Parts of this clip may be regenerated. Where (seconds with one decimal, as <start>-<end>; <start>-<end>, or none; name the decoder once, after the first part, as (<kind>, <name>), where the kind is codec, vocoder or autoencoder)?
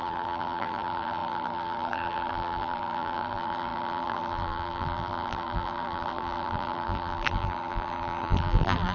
0.0-8.9 (vocoder, BigVGAN v2)